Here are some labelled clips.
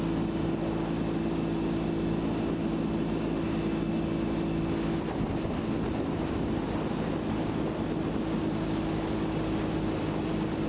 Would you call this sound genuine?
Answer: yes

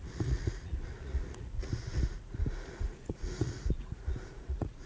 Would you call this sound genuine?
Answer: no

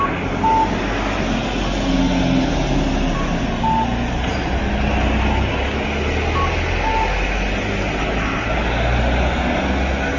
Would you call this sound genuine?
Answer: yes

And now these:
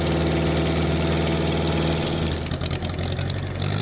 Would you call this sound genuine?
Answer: yes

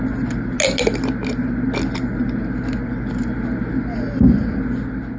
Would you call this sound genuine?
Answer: yes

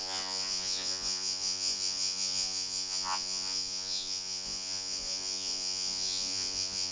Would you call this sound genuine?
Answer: no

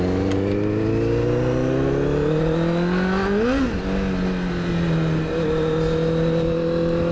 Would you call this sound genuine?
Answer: yes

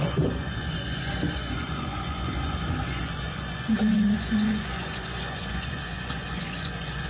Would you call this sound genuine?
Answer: no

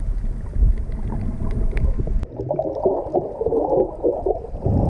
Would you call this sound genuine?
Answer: yes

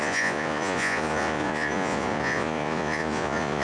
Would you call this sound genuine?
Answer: no